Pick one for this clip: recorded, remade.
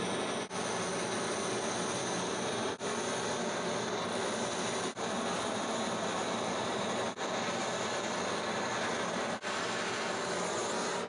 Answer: recorded